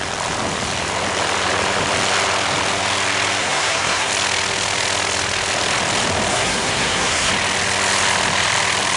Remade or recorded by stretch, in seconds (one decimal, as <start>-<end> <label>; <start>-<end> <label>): 0.0-3.4 recorded; 3.4-4.1 remade; 4.1-6.3 recorded; 6.3-7.3 remade; 7.3-9.0 recorded